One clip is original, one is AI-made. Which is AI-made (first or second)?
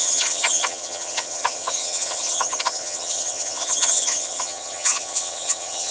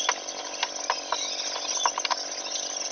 first